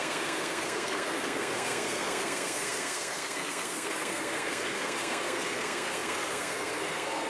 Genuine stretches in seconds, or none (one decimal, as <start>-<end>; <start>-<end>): none

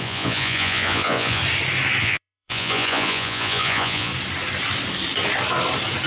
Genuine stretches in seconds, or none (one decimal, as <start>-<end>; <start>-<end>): 1.4-2.0; 4.1-6.1

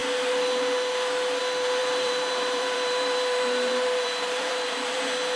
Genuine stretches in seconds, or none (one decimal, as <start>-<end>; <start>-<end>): 0.0-1.8; 5.0-5.4

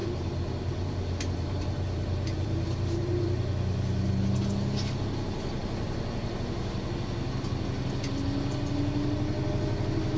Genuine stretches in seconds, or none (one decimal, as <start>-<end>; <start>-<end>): 3.4-10.2

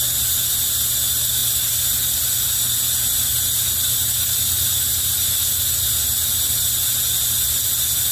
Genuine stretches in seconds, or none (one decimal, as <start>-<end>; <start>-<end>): 0.0-8.1

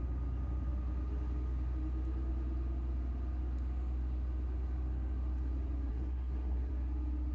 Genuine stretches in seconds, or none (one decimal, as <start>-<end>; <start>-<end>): 0.0-5.9; 6.7-7.3

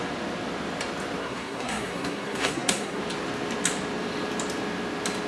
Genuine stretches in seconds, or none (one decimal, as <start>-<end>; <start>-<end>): 0.0-1.2; 3.0-5.3

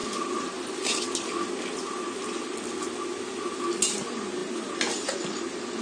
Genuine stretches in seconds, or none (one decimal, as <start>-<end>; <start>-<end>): 0.0-5.8